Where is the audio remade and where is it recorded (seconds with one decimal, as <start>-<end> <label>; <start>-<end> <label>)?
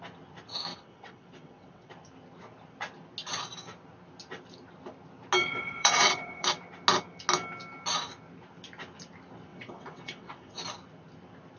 0.0-0.7 recorded; 0.7-1.9 remade; 1.9-5.4 recorded; 5.4-6.6 remade; 6.6-9.5 recorded; 9.5-10.6 remade; 10.6-11.6 recorded